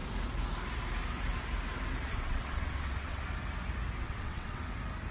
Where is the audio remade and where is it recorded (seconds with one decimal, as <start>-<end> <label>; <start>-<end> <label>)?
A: 0.0-2.1 recorded; 2.1-3.2 remade; 3.2-4.0 recorded; 4.0-4.6 remade; 4.6-5.1 recorded